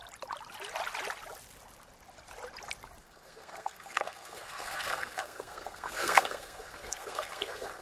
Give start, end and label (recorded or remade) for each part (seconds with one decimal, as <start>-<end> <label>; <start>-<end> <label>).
0.0-3.0 recorded; 3.0-7.8 remade